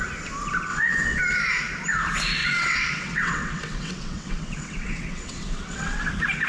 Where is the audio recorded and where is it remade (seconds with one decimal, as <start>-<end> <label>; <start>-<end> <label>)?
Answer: 0.0-0.7 recorded; 0.7-1.2 remade; 1.2-2.4 recorded; 2.4-6.1 remade; 6.1-6.5 recorded